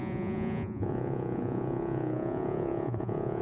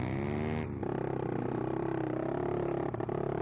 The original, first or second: second